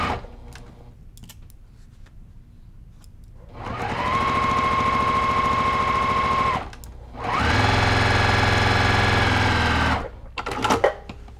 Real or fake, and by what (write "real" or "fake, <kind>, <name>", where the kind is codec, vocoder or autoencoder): real